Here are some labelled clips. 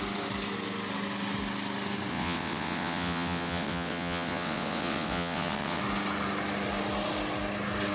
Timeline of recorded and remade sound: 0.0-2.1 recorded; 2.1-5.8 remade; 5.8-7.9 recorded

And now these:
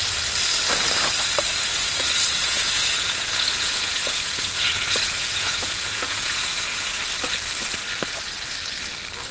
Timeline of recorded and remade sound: 0.0-2.4 recorded; 2.4-7.0 remade; 7.0-9.3 recorded

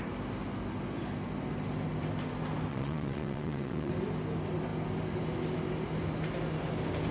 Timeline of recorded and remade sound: 0.0-2.7 recorded; 2.7-3.9 remade; 3.9-7.1 recorded

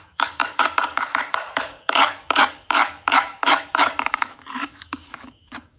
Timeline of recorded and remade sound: 0.0-5.8 remade

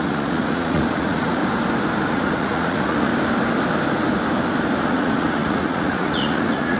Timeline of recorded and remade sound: 0.0-1.4 remade; 1.4-2.1 recorded; 2.1-3.1 remade; 3.1-4.8 recorded; 4.8-6.8 remade

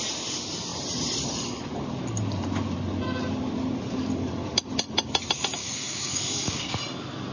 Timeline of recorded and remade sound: 0.0-5.6 recorded; 5.6-6.8 remade; 6.8-7.3 recorded

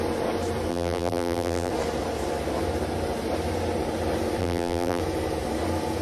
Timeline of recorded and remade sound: 0.0-0.7 recorded; 0.7-1.7 remade; 1.7-4.4 recorded; 4.4-5.0 remade; 5.0-6.0 recorded